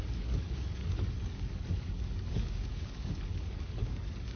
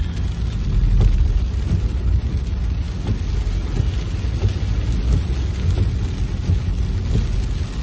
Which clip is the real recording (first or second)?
second